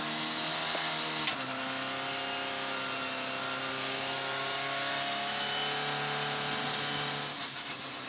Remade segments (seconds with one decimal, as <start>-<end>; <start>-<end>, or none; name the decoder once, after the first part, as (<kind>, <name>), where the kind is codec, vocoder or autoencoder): 3.7-4.9 (codec, DAC)